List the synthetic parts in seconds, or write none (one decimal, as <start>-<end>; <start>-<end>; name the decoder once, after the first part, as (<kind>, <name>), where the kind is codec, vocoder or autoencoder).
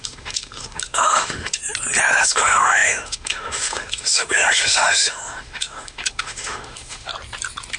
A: 0.0-1.6 (autoencoder, DAC-VAE); 2.2-7.1